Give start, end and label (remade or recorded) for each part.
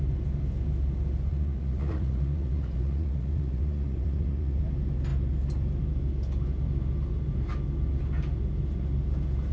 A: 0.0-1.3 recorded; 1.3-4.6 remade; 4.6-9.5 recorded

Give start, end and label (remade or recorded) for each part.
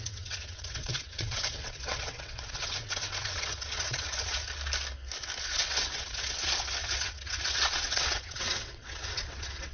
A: 0.0-4.4 remade; 4.4-5.4 recorded; 5.4-9.7 remade